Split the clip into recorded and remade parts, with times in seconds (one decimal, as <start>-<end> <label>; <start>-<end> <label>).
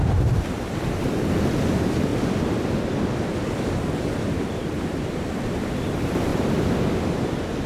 0.0-2.1 remade; 2.1-2.8 recorded; 2.8-6.3 remade; 6.3-7.3 recorded; 7.3-7.7 remade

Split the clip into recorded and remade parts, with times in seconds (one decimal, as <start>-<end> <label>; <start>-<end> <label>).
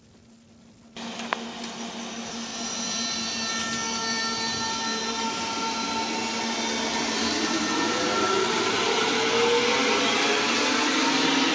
0.0-2.5 recorded; 2.5-3.6 remade; 3.6-4.9 recorded; 4.9-5.4 remade; 5.4-6.9 recorded; 6.9-9.1 remade; 9.1-11.5 recorded